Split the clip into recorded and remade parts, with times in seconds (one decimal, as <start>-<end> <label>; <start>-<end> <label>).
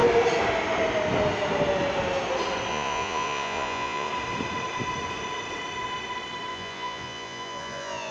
0.0-2.7 recorded; 2.7-4.1 remade; 4.1-6.5 recorded; 6.5-8.1 remade